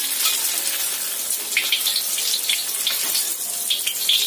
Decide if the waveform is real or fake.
real